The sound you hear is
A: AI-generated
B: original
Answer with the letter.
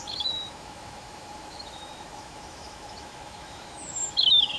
A